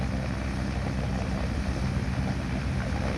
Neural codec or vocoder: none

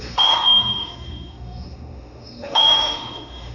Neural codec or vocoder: autoencoder, DAC-VAE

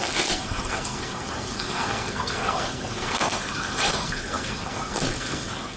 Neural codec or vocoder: codec, SNAC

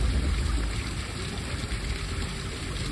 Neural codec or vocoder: none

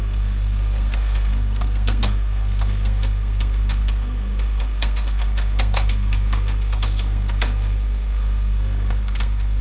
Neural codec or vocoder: codec, SNAC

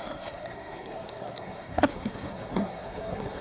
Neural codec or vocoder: codec, SNAC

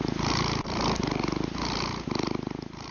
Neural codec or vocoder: none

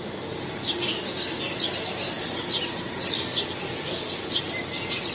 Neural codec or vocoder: none